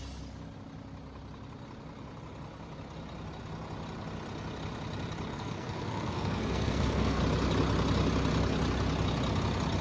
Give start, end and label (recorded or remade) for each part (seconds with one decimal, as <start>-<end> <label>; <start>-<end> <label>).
0.0-5.3 recorded; 5.3-7.2 remade; 7.2-9.8 recorded